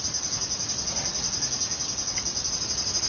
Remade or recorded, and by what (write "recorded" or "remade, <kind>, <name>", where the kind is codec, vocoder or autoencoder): recorded